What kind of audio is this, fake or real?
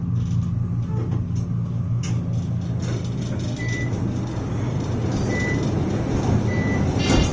real